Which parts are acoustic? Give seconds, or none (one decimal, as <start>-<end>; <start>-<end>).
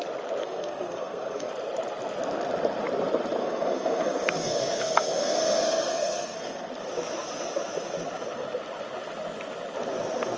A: 0.0-0.4; 1.5-3.4; 6.7-10.4